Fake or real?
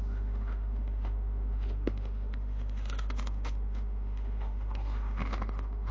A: fake